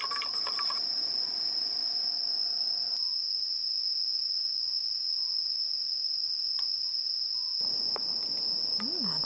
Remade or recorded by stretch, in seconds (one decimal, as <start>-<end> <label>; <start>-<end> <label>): 0.0-9.2 recorded